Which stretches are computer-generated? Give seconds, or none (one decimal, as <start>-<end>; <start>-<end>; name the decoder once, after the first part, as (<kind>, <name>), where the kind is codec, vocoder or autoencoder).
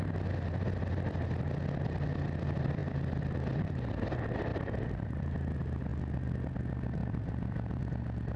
4.5-5.2 (vocoder, BigVGAN v2); 7.0-7.8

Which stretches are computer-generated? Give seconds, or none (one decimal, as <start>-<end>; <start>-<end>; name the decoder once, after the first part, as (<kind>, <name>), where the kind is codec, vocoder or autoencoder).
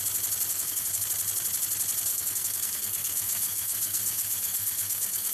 0.5-1.0 (codec, SNAC); 2.1-5.3